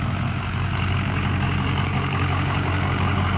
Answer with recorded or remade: remade